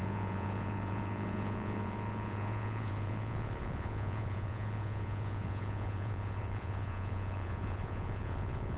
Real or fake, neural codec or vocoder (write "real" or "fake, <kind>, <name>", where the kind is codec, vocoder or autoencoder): fake, vocoder, Vocos